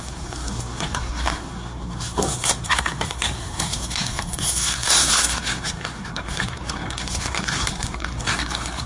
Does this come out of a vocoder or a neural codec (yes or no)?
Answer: yes